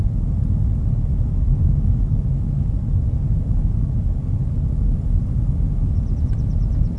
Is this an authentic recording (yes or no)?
yes